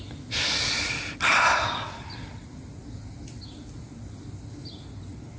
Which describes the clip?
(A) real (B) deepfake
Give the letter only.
A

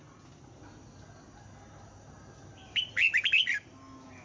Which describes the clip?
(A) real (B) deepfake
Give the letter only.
A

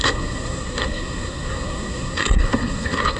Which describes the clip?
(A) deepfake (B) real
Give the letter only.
A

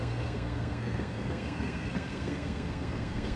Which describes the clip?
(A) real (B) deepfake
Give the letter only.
B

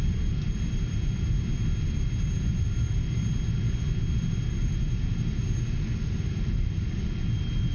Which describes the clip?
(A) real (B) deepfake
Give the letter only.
A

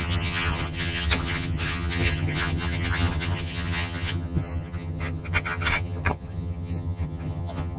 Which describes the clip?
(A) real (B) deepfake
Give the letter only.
B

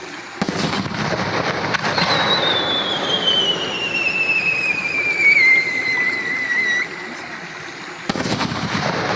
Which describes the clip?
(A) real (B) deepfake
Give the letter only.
A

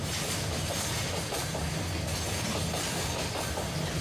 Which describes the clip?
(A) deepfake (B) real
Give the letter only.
B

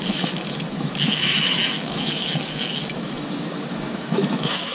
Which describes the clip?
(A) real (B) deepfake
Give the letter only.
B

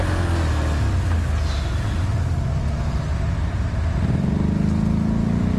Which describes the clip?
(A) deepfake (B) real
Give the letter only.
B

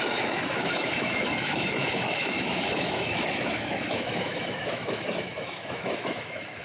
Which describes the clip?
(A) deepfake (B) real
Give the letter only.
A